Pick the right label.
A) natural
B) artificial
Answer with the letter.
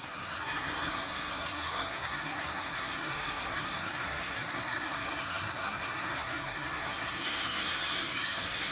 B